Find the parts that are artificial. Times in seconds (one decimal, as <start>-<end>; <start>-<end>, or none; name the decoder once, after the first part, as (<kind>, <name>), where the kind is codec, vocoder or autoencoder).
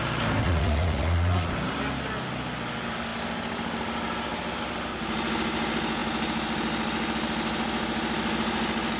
0.4-1.5 (vocoder, Vocos)